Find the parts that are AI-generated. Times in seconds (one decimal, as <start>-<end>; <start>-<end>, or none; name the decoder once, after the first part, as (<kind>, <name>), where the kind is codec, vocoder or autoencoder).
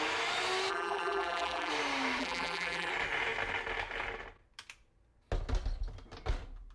0.7-1.7 (vocoder, BigVGAN v2); 2.2-2.9